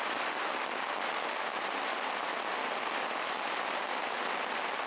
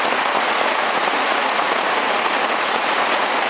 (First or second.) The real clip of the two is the first